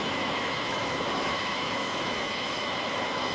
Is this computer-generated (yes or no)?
yes